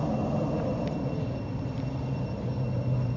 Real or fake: real